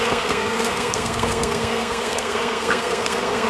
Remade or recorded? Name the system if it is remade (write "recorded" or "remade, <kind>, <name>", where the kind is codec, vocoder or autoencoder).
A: remade, codec, SNAC